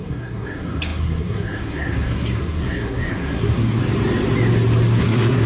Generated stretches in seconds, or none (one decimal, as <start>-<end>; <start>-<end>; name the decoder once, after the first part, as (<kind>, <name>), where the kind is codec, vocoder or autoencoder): 0.0-3.8 (codec, SNAC); 5.0-5.5